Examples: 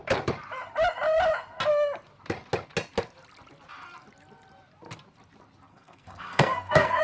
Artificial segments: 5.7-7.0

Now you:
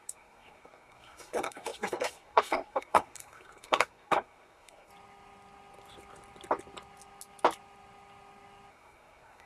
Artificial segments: 0.0-4.9; 8.7-9.5

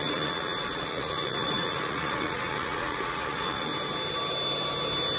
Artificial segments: 0.0-3.7

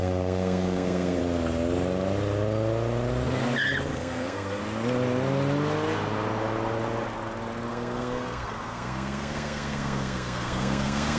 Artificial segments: 0.0-1.2; 3.9-4.6; 7.7-11.2